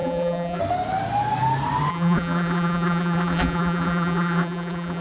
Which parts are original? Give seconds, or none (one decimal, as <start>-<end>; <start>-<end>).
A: 0.6-1.9